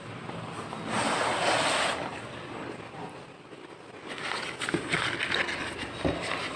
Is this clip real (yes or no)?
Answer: yes